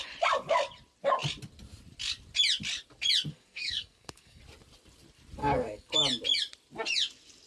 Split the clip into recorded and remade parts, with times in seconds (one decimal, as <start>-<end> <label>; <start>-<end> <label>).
0.0-3.3 recorded; 3.3-4.4 remade; 4.4-5.4 recorded; 5.4-5.9 remade; 5.9-7.5 recorded